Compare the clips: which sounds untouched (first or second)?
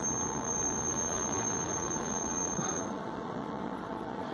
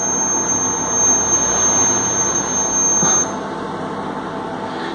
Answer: second